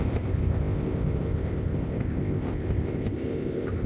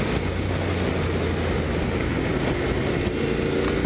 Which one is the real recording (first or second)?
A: second